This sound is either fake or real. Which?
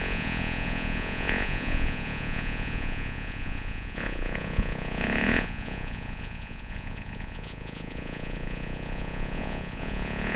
fake